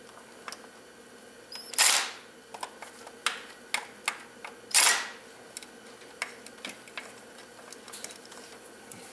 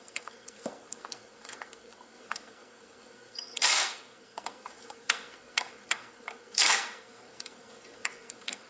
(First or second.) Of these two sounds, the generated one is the second